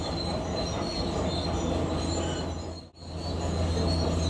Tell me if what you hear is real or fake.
real